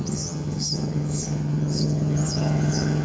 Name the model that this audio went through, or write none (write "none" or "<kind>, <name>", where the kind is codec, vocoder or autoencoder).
vocoder, HiFi-GAN